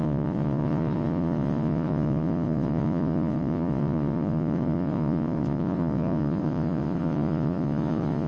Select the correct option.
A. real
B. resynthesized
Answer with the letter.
B